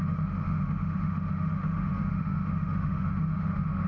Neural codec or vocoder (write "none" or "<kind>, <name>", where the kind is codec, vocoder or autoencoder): autoencoder, DAC-VAE